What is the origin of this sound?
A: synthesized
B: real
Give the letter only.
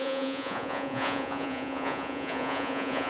A